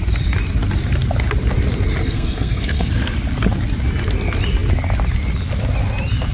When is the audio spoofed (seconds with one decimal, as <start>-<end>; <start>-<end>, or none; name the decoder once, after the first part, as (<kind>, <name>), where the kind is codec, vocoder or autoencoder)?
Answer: 2.0-2.9 (codec, SNAC)

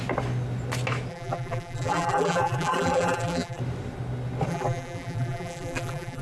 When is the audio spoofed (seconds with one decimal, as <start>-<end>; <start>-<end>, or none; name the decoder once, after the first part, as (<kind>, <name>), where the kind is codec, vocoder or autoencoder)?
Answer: 1.1-3.6 (vocoder, BigVGAN v2); 4.5-6.2

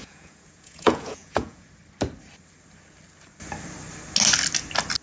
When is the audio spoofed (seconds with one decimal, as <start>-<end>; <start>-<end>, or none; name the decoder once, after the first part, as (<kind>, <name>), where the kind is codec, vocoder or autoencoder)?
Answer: 0.0-1.7 (vocoder, Vocos)

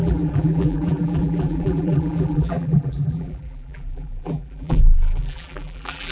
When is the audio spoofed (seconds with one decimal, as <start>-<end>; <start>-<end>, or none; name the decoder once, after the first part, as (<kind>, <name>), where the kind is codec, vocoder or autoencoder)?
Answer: 0.0-6.1 (vocoder, BigVGAN v2)

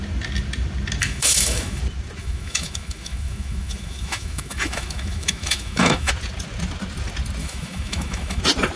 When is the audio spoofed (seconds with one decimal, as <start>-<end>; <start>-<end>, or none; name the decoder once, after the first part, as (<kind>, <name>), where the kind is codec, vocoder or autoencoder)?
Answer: 1.0-1.8 (autoencoder, DAC-VAE); 2.2-6.1; 7.4-8.4

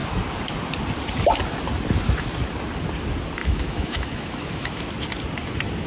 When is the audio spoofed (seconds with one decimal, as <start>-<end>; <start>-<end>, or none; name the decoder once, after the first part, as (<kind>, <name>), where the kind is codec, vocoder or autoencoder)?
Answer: 3.4-4.9 (autoencoder, DAC-VAE)

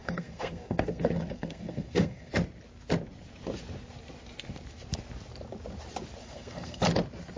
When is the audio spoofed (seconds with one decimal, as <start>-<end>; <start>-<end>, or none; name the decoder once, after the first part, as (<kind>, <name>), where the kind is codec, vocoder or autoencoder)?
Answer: 0.0-2.3 (codec, SNAC); 6.2-6.8